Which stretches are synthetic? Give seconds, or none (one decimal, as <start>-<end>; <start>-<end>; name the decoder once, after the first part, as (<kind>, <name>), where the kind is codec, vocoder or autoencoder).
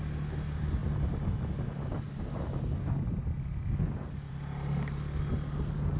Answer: none